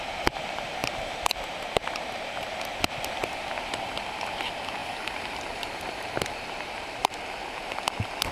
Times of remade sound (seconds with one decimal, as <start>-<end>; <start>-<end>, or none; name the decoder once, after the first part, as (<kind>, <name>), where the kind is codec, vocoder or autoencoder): 0.8-2.8 (vocoder, BigVGAN v2); 4.8-7.1